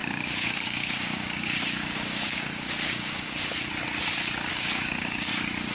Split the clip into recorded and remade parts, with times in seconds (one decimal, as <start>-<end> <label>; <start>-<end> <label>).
0.0-3.4 remade; 3.4-4.5 recorded; 4.5-5.3 remade; 5.3-5.7 recorded